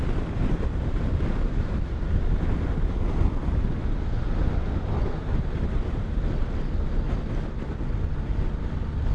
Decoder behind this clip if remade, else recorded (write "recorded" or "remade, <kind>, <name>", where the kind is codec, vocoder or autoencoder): recorded